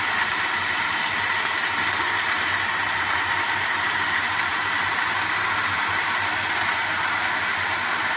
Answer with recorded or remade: recorded